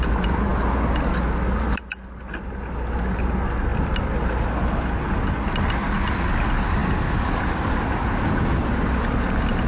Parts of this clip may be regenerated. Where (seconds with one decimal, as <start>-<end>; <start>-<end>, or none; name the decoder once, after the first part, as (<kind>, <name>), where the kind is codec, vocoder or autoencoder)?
none